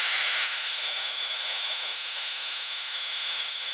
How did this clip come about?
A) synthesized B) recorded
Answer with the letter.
A